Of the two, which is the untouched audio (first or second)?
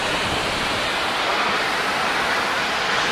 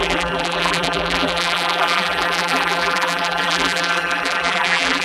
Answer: first